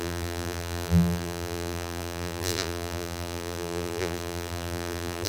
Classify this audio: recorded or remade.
remade